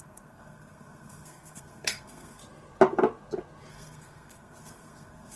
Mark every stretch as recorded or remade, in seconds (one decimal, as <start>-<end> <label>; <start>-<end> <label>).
0.0-2.4 remade; 2.4-3.7 recorded; 3.7-5.4 remade